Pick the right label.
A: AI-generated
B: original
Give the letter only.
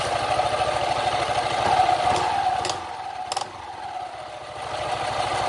B